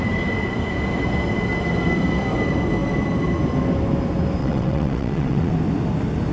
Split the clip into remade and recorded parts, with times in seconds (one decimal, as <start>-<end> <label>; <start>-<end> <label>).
0.0-4.4 recorded; 4.4-5.5 remade; 5.5-6.3 recorded